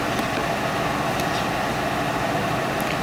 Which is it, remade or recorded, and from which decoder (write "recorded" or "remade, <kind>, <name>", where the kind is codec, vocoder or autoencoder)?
recorded